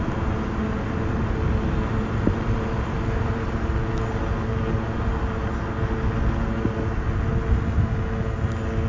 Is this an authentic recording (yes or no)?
yes